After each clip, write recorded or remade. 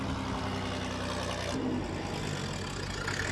recorded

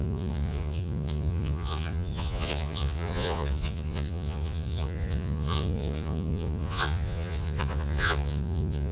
remade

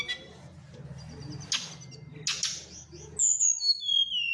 recorded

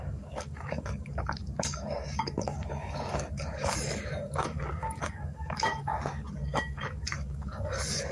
remade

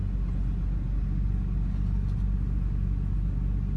recorded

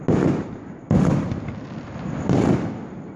recorded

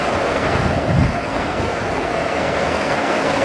remade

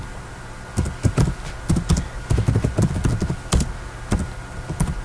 recorded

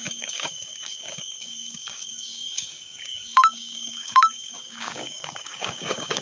remade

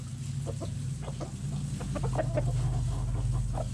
recorded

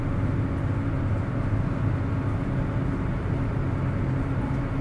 recorded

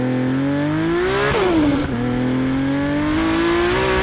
recorded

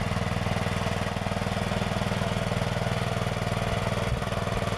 recorded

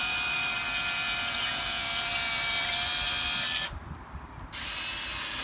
recorded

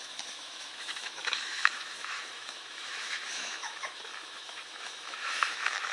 remade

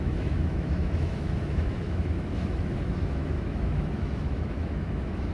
remade